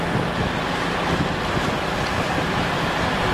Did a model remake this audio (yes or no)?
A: no